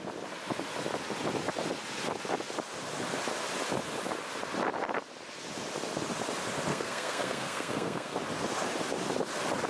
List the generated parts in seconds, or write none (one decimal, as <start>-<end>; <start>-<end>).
6.7-8.2